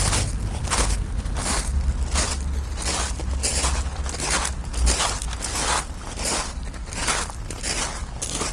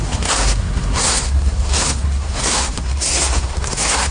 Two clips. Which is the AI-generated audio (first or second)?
second